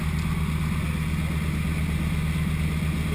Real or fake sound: real